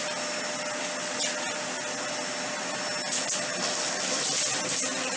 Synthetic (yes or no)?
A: no